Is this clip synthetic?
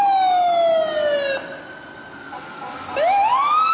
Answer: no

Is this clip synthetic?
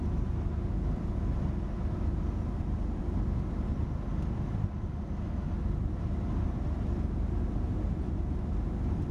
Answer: no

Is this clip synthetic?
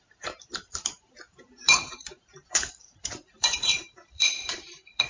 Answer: yes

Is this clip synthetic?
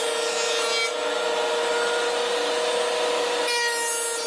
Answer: no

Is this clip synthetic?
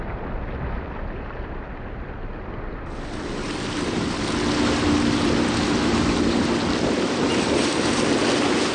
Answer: no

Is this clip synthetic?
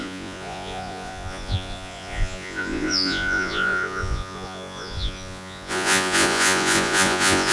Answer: yes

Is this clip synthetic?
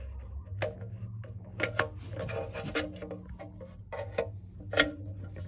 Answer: no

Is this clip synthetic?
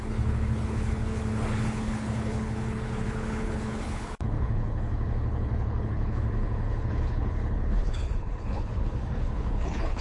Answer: yes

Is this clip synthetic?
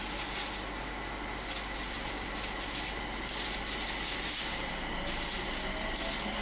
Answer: no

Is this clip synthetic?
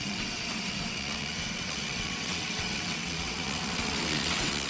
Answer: yes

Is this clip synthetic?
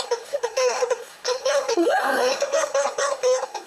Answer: yes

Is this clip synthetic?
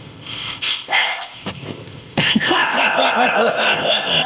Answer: yes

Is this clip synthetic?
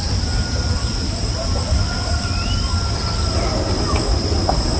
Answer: no